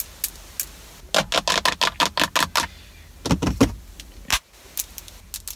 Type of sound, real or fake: real